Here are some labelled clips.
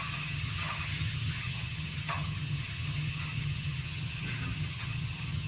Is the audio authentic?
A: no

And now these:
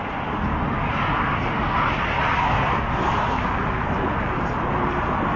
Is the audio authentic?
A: yes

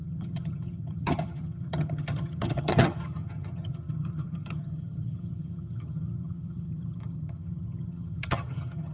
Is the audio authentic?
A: no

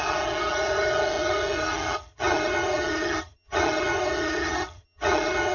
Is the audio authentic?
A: no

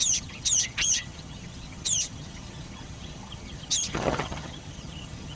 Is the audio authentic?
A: no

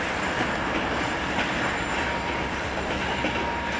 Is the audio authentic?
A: yes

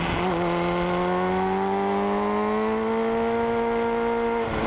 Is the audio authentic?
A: yes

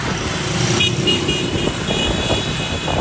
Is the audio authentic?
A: yes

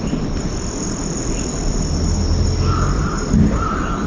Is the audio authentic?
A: yes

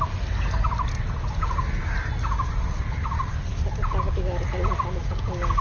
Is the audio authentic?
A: yes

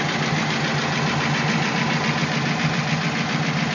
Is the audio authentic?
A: yes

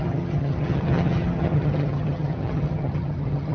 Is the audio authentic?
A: no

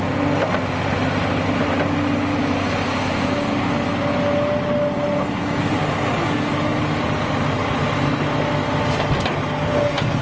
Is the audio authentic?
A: yes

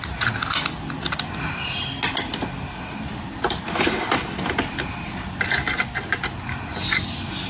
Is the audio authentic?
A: yes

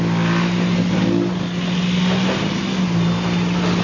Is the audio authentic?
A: yes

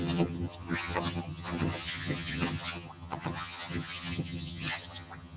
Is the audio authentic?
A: no